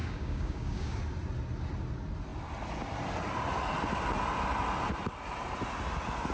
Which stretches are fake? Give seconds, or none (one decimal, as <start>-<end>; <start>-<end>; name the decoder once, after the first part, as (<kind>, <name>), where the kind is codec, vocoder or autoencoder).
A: 0.0-1.0 (codec, DAC)